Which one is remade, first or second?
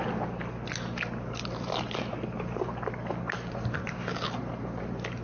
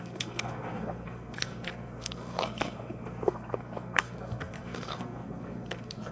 second